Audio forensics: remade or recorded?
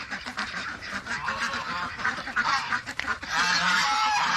remade